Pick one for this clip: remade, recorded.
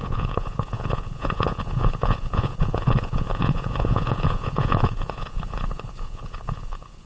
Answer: remade